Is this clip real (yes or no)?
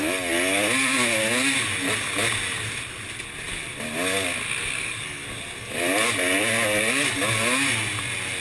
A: yes